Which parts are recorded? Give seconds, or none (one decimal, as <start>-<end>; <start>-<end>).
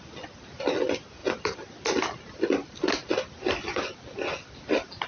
0.0-5.1